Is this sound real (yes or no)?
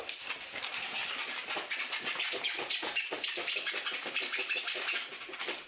yes